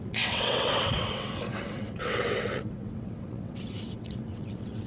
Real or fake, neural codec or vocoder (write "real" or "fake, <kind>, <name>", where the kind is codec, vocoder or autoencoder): fake, vocoder, WaveNeXt